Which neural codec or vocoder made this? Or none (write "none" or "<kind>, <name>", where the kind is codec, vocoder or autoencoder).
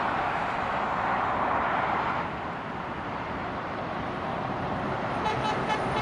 vocoder, BigVGAN v2